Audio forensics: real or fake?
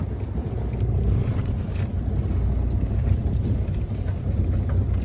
real